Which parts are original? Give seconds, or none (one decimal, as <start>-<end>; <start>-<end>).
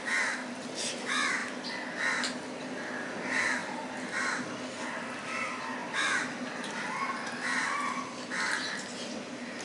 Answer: 0.0-9.6